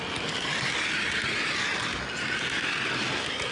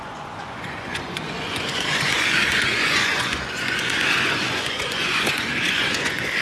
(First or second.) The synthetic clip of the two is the second